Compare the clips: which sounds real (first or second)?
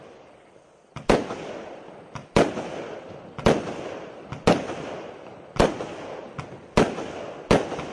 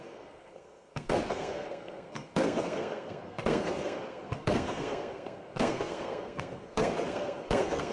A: first